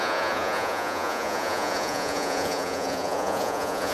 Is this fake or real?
fake